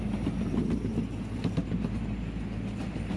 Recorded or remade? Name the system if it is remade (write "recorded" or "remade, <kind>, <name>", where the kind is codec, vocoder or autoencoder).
recorded